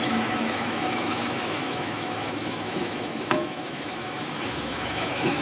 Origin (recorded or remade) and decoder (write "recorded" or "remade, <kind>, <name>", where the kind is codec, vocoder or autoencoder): remade, autoencoder, DAC-VAE